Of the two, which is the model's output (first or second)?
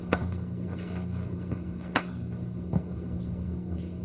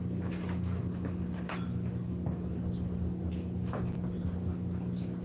first